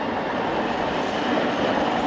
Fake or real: real